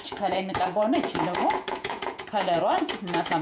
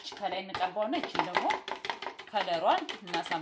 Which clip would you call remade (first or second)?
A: first